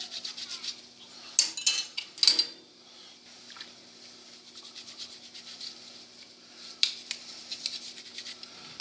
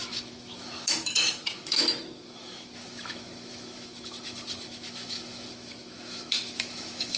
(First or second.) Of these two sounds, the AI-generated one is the second